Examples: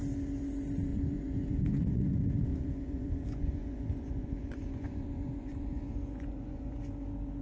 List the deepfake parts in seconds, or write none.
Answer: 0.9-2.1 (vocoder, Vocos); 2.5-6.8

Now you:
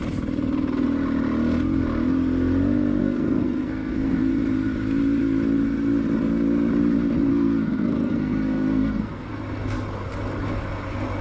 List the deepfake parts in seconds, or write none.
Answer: 3.0-4.3 (codec, SNAC); 7.3-9.3

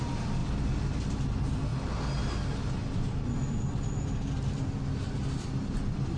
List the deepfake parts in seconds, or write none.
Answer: none

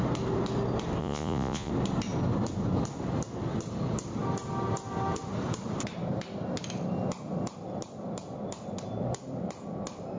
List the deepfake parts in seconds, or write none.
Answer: 1.0-1.7 (vocoder, Vocos)

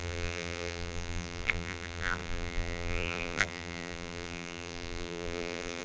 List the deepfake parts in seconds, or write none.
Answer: 0.0-5.8 (vocoder, BigVGAN v2)

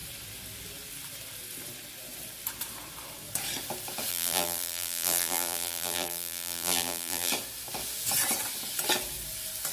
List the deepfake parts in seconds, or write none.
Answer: 4.1-7.3 (vocoder, BigVGAN v2)

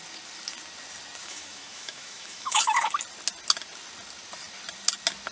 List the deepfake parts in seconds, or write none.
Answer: 1.2-2.9 (autoencoder, DAC-VAE)

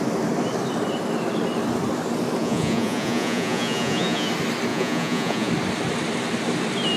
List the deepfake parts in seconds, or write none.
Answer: 2.4-4.3 (vocoder, Vocos); 4.7-5.5